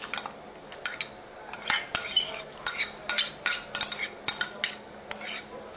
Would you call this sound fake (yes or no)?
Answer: no